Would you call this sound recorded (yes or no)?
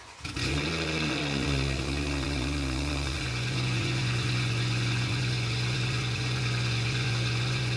no